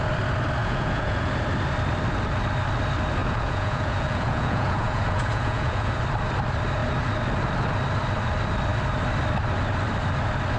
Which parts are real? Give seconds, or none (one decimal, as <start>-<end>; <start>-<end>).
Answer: 0.0-0.6; 1.3-3.2; 6.0-10.6